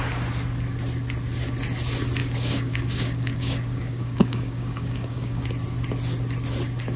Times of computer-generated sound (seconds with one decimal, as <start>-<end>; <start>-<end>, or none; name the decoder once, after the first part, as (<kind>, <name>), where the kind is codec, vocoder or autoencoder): 2.2-5.5 (codec, DAC)